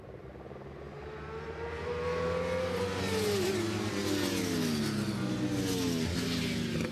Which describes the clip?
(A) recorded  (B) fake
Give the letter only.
A